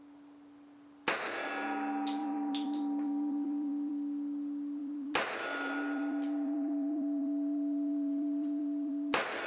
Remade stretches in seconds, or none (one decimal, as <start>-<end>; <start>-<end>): 2.2-3.9; 4.8-9.5